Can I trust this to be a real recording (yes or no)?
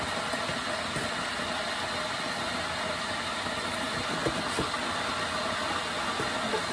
yes